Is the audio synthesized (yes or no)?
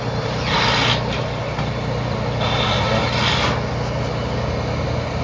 no